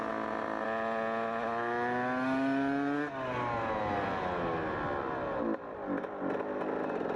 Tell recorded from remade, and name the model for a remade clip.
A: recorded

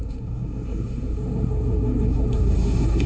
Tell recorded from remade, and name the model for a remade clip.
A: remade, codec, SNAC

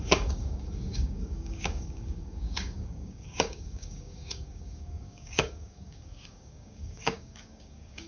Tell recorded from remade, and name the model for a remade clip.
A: remade, codec, DAC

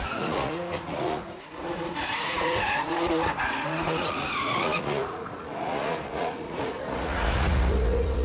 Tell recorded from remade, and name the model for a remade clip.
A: remade, vocoder, Vocos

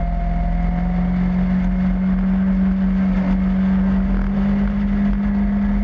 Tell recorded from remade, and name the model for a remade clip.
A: recorded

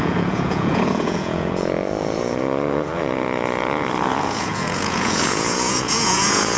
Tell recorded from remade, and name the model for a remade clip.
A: remade, vocoder, Vocos